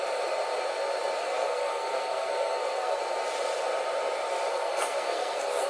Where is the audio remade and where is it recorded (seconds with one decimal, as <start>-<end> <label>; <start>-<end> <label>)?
0.0-1.2 recorded; 1.2-3.0 remade; 3.0-4.5 recorded; 4.5-5.7 remade